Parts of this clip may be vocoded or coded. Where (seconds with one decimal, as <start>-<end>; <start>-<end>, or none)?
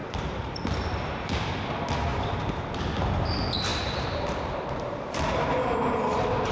0.0-1.7; 2.1-2.8; 3.7-6.5